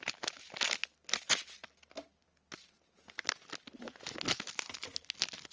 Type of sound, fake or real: real